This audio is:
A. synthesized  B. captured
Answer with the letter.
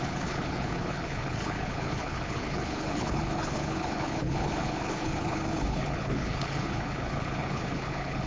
A